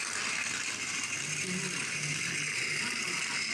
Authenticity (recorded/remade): recorded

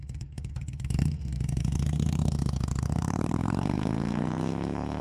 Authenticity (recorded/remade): remade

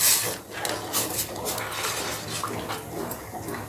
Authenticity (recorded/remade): recorded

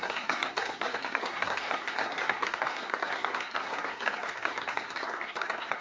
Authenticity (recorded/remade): remade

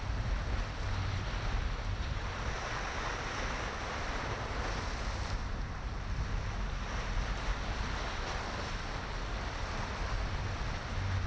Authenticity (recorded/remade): recorded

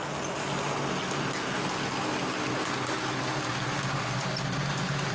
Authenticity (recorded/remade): recorded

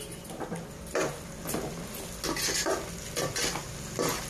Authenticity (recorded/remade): recorded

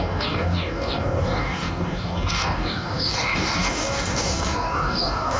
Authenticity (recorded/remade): remade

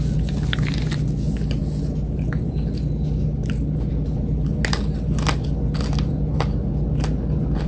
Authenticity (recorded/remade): recorded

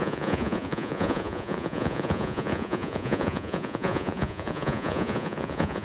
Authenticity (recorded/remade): remade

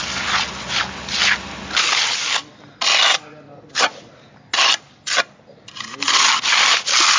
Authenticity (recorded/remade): recorded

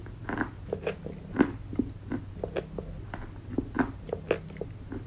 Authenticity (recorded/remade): recorded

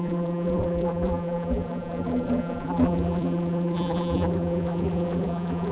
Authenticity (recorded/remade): remade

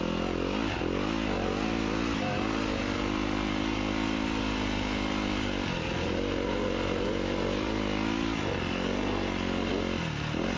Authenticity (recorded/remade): recorded